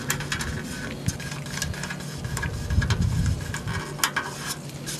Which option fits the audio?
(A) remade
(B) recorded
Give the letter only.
B